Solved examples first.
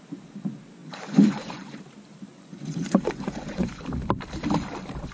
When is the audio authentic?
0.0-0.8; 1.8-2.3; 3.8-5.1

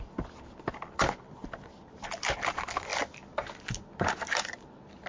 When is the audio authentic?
0.0-5.1

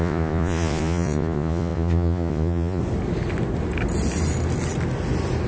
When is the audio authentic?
2.8-5.5

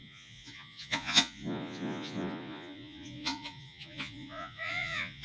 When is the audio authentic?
none

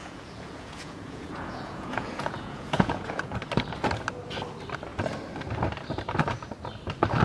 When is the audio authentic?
3.4-7.2